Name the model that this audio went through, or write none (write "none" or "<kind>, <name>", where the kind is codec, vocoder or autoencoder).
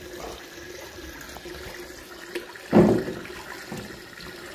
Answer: none